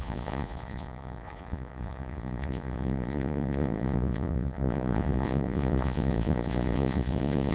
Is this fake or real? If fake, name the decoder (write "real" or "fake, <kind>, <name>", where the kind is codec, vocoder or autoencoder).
fake, vocoder, Vocos